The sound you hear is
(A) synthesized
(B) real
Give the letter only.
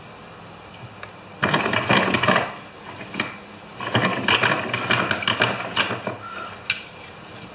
B